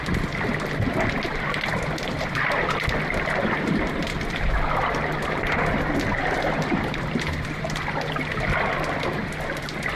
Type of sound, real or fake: real